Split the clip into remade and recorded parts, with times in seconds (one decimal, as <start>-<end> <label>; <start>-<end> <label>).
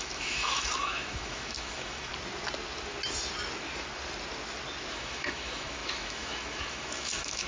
0.0-2.1 remade; 2.1-4.9 recorded; 4.9-7.5 remade